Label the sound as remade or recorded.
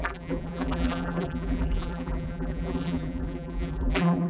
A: remade